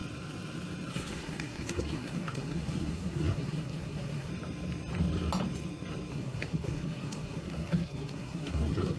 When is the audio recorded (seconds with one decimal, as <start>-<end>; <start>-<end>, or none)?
0.0-0.9; 4.3-6.1